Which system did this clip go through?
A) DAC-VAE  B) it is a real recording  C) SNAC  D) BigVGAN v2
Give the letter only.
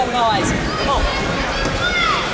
B